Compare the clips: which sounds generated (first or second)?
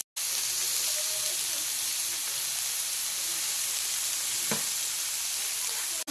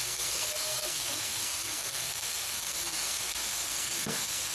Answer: second